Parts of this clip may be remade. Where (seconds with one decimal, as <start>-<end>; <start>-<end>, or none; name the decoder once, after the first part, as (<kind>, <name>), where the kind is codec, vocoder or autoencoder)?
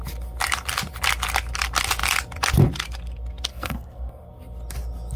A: 3.5-4.3 (codec, SNAC)